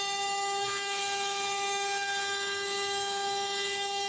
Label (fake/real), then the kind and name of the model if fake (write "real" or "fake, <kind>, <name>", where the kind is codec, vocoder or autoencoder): fake, autoencoder, DAC-VAE